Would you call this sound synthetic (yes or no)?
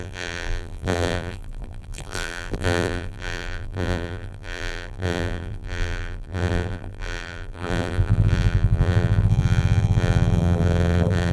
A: yes